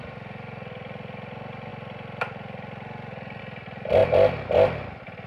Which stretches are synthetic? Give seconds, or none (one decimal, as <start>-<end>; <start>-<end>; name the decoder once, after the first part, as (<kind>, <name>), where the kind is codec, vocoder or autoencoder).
none